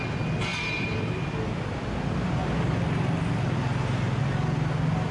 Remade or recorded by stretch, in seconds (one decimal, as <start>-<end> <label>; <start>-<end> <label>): 0.0-0.5 recorded; 0.5-2.0 remade; 2.0-5.1 recorded